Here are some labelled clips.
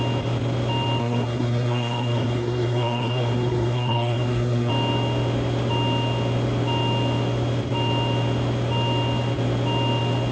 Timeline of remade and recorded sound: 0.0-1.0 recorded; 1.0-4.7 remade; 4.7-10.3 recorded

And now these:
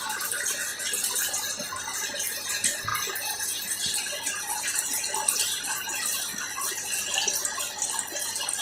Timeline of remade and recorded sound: 0.0-0.7 remade; 0.7-1.3 recorded; 1.3-6.3 remade; 6.3-8.6 recorded

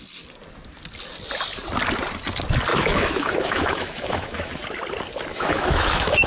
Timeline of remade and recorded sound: 0.0-2.7 recorded; 2.7-4.5 remade; 4.5-5.3 recorded; 5.3-6.3 remade

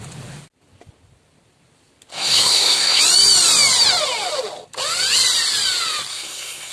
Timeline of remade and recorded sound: 0.0-2.1 recorded; 2.1-3.0 remade; 3.0-6.1 recorded; 6.1-6.7 remade